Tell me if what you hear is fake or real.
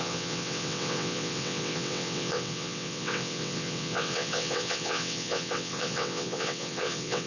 fake